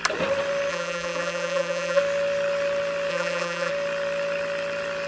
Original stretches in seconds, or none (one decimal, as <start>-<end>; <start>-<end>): 0.0-0.7; 2.0-3.1; 3.7-5.1